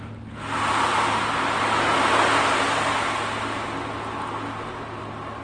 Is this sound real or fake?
real